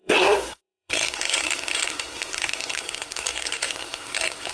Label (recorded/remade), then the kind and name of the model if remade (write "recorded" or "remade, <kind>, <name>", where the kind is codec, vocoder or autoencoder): remade, codec, SNAC